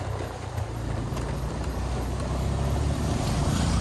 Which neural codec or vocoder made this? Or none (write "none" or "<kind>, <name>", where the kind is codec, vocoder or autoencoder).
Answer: vocoder, BigVGAN v2